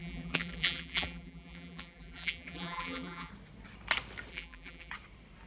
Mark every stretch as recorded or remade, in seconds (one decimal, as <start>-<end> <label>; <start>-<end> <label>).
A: 0.0-3.3 remade; 3.3-4.3 recorded; 4.3-4.9 remade; 4.9-5.5 recorded